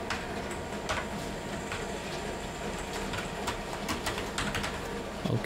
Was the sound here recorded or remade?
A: recorded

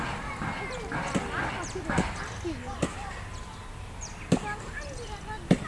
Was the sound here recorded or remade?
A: recorded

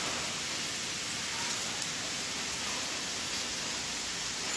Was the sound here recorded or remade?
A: recorded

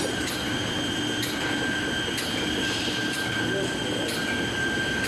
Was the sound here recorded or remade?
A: recorded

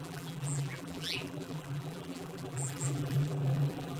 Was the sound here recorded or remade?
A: remade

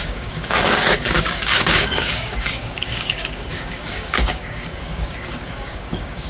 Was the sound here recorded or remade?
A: remade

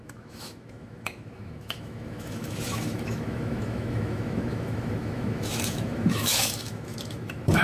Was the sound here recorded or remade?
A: remade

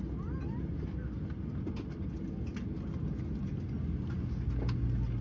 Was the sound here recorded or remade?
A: recorded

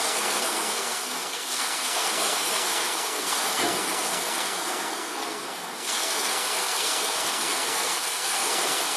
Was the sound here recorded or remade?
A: remade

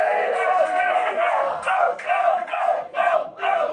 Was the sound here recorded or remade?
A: remade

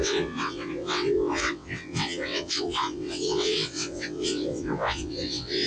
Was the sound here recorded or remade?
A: remade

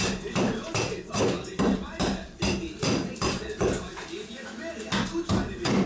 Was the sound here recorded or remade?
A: recorded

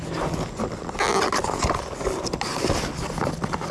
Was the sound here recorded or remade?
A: recorded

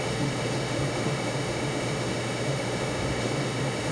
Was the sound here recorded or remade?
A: remade